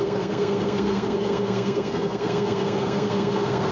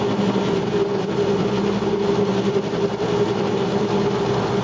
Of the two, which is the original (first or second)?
second